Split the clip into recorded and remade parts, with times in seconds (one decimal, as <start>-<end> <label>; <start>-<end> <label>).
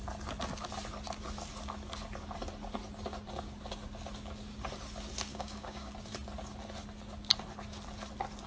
0.0-5.3 recorded; 5.3-5.9 remade; 5.9-8.5 recorded